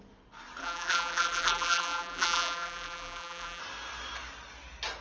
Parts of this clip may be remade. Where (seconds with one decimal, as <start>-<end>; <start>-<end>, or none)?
0.6-3.6